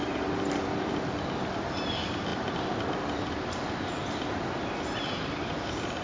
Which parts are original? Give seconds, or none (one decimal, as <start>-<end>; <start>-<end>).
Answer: 0.0-6.0